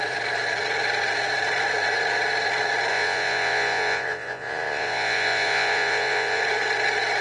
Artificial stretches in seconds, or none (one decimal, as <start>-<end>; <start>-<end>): 2.9-6.4